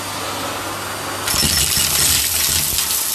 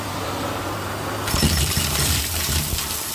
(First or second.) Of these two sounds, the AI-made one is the second